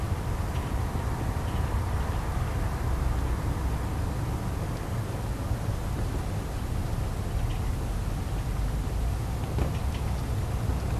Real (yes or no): yes